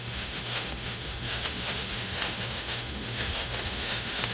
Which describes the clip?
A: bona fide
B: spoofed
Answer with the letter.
B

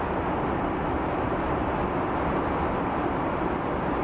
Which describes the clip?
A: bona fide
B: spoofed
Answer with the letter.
A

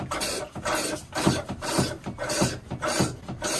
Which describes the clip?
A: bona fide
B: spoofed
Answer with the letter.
A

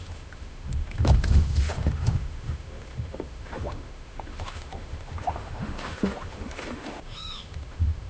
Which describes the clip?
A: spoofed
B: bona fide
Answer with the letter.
A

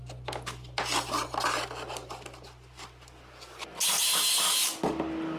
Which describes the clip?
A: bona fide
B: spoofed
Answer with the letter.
A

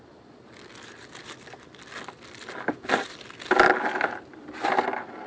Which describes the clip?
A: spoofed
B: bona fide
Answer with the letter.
B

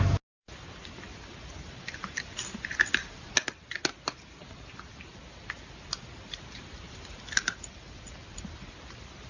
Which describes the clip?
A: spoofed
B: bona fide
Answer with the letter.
B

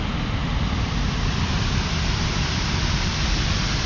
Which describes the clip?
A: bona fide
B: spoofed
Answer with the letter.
A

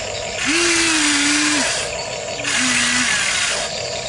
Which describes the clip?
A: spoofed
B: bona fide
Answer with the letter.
B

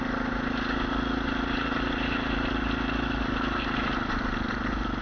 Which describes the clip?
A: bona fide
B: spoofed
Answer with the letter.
A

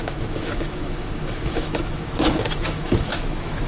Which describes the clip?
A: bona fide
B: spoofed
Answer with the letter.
B